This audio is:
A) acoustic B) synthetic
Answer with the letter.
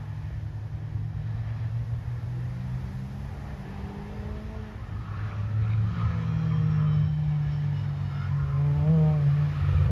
A